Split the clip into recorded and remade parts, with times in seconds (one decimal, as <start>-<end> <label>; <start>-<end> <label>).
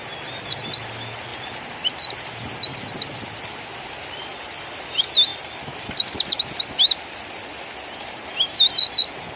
0.0-9.4 recorded